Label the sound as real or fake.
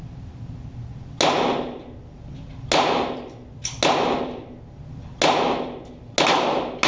real